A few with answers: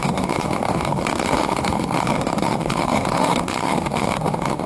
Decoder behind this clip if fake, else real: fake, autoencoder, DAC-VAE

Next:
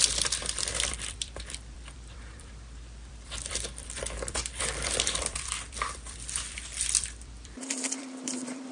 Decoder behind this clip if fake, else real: fake, vocoder, BigVGAN v2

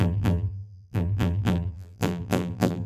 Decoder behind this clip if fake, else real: fake, vocoder, BigVGAN v2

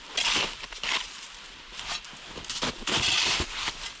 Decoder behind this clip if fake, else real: real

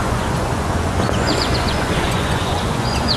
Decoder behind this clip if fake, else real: fake, vocoder, Vocos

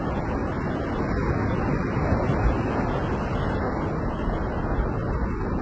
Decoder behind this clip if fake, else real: real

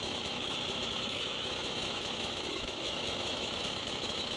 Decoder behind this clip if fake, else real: fake, autoencoder, DAC-VAE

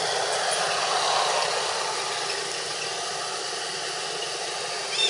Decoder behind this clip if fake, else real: real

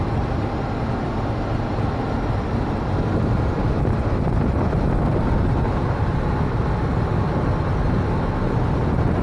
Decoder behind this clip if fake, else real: real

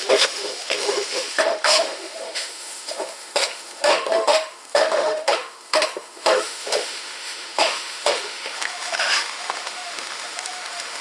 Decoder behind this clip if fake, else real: fake, autoencoder, DAC-VAE